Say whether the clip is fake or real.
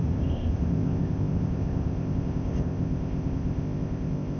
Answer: fake